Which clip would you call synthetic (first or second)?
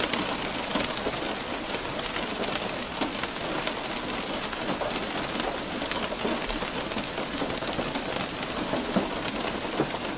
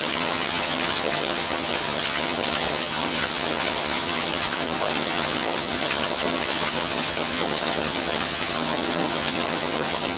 second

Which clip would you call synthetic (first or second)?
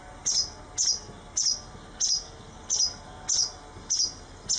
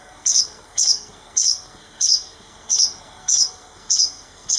second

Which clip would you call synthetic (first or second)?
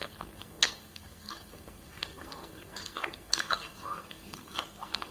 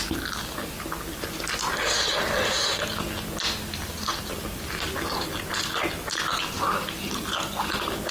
first